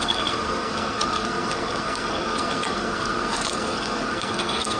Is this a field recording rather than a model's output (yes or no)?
no